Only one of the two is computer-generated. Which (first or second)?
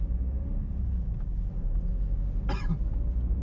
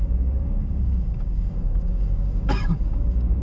second